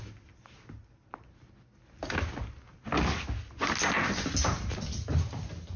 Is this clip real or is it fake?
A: real